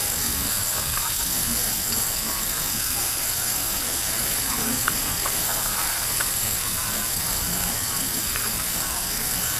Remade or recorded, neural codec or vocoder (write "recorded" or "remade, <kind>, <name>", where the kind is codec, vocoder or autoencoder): remade, codec, SNAC